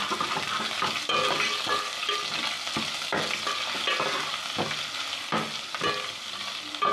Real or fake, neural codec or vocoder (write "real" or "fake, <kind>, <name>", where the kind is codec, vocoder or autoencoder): real